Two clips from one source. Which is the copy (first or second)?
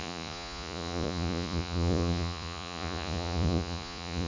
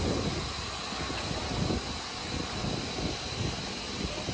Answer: first